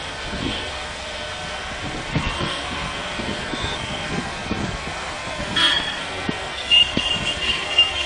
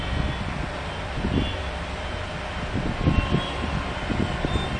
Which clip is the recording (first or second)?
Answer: second